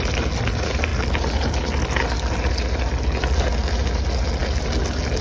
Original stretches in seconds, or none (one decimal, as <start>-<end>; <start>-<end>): 0.0-5.2